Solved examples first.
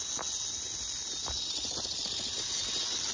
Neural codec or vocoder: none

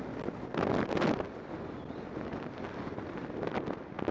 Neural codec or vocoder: none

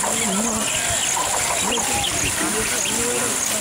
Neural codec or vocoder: none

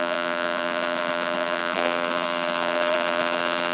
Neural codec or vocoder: vocoder, BigVGAN v2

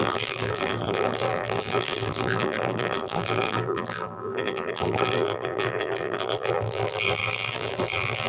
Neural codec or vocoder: vocoder, BigVGAN v2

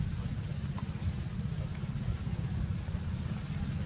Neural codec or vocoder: none